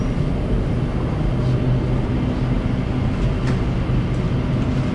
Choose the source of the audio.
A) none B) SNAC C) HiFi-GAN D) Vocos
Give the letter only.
A